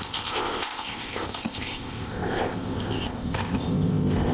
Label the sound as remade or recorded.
remade